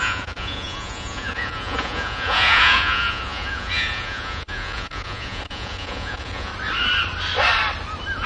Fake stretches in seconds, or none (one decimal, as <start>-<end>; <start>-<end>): 0.0-6.5